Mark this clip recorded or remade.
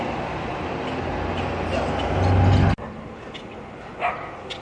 recorded